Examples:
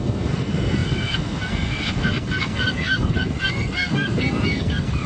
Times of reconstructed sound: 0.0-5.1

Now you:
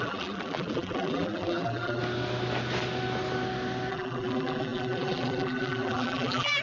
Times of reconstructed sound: 0.0-2.0; 3.9-6.6

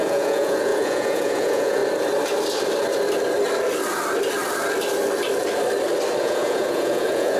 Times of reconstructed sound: 0.0-1.8; 6.2-7.4

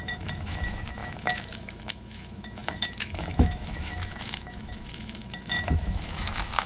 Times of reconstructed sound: 0.0-6.7

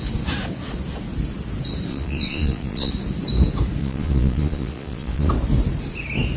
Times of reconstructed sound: 1.9-2.9; 3.8-5.3